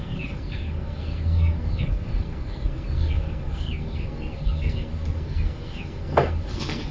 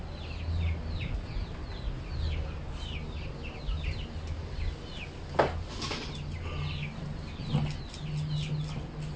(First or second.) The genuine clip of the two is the second